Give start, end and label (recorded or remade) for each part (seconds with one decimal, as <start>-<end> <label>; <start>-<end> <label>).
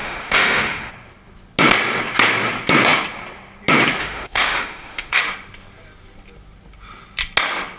0.0-0.9 remade; 0.9-4.0 recorded; 4.0-5.2 remade; 5.2-7.8 recorded